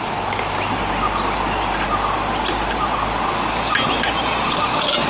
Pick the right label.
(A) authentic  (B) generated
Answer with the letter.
A